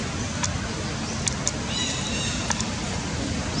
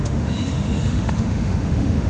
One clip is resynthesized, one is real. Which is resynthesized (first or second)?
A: second